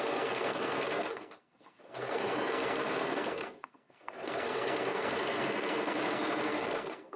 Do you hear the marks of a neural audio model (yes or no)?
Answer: yes